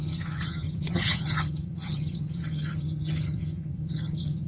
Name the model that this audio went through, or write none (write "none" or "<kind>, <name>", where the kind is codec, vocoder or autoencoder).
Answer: vocoder, HiFi-GAN